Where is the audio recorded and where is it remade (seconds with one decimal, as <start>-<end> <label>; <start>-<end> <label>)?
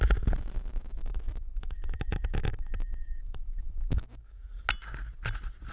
0.0-1.0 recorded; 1.0-4.4 remade; 4.4-5.7 recorded